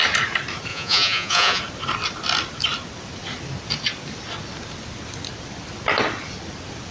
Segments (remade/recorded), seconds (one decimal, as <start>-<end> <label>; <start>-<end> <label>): 0.0-0.7 recorded; 0.7-1.6 remade; 1.6-6.9 recorded